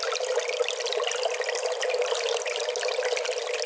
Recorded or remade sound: recorded